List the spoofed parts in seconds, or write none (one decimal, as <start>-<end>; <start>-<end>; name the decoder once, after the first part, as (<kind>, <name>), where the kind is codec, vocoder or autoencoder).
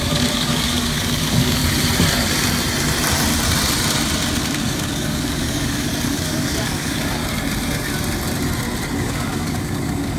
0.0-1.6 (codec, DAC); 4.4-7.2; 9.0-10.2